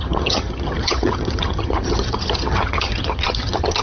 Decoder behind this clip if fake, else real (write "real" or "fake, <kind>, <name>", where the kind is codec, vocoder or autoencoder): fake, vocoder, HiFi-GAN